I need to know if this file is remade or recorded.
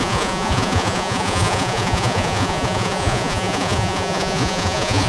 remade